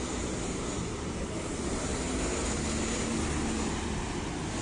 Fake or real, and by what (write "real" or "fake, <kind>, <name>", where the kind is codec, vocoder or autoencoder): real